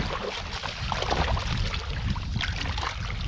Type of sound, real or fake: real